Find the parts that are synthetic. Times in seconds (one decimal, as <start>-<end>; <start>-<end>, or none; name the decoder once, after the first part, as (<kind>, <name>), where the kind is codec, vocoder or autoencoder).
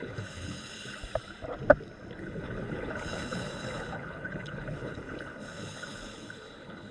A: 0.0-1.0 (codec, HILCodec); 2.2-6.9